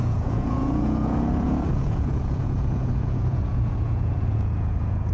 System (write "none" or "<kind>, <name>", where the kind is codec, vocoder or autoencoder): vocoder, Vocos